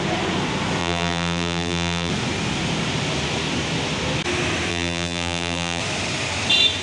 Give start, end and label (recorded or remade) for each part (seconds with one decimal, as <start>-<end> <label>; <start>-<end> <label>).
0.0-0.8 recorded; 0.8-2.1 remade; 2.1-4.7 recorded; 4.7-5.8 remade; 5.8-6.8 recorded